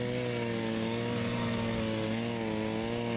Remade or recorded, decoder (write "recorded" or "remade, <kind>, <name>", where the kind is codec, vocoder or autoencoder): recorded